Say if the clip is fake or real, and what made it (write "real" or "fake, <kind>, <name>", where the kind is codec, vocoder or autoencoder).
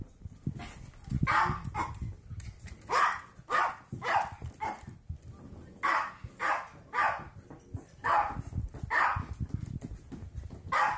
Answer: real